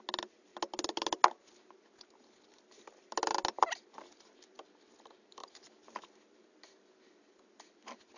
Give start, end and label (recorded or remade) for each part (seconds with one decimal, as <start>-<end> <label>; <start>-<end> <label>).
0.0-8.2 recorded